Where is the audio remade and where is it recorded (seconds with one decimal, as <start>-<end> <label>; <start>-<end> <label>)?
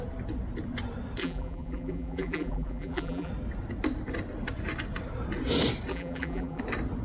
0.0-1.2 recorded; 1.2-3.3 remade; 3.3-5.9 recorded; 5.9-6.6 remade; 6.6-7.0 recorded